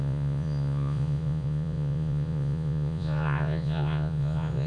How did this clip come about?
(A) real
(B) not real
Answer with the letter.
B